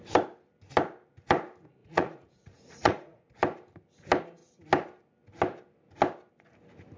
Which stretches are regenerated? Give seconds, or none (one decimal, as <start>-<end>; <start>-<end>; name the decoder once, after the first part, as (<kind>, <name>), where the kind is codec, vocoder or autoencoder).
1.8-3.3 (vocoder, Vocos)